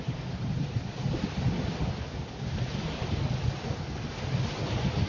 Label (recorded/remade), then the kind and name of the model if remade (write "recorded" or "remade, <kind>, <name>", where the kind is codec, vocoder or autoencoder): recorded